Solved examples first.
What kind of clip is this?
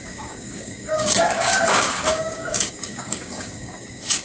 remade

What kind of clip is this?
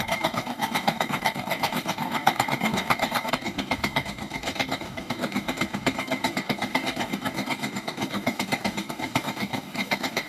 remade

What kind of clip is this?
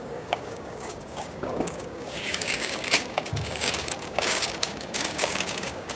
remade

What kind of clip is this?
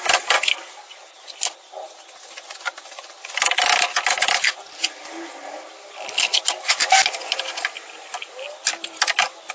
recorded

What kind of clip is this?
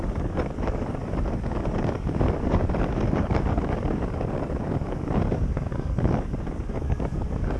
remade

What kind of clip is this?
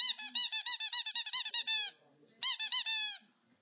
recorded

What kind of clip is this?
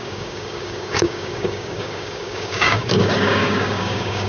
remade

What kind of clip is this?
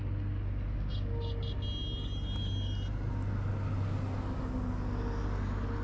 recorded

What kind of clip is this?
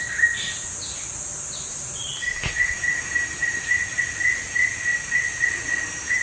recorded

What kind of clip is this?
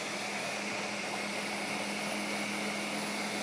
recorded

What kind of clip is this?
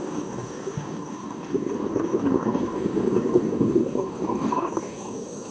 remade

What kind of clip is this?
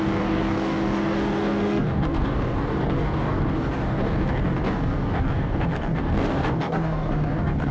remade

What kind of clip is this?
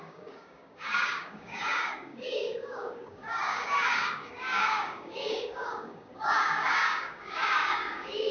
remade